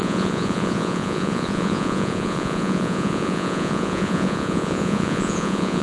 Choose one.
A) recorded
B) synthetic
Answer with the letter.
B